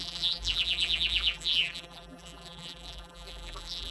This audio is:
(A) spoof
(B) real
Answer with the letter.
A